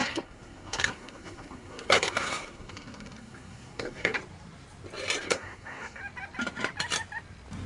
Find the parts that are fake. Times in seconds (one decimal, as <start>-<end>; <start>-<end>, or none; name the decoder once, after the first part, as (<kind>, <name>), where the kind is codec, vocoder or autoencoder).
0.0-4.2 (codec, SNAC); 5.2-6.0